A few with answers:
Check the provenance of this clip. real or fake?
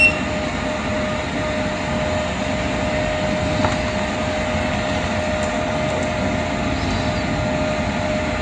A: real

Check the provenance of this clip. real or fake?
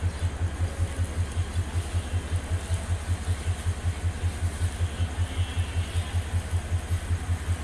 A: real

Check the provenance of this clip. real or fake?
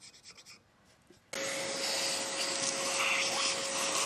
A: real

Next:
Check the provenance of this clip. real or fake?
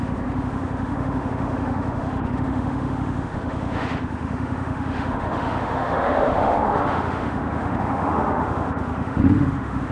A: fake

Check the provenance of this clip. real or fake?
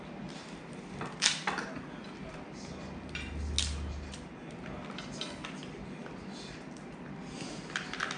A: real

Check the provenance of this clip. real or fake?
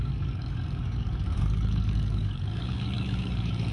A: fake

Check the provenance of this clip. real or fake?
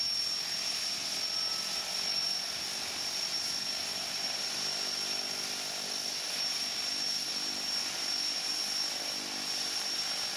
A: real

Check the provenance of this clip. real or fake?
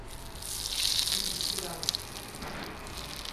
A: real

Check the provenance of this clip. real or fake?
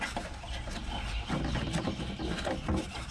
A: real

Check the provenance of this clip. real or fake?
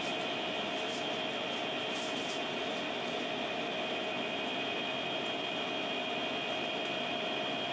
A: real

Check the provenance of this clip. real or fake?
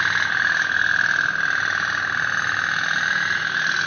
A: real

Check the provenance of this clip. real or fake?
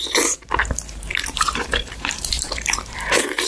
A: fake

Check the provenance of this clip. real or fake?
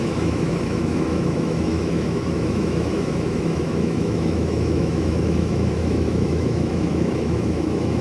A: fake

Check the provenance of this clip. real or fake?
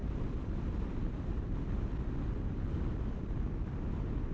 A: real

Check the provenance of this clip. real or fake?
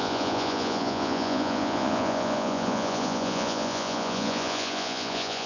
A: fake